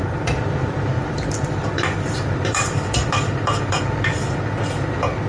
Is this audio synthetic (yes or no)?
yes